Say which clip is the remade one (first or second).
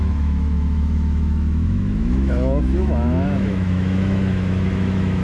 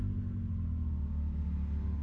first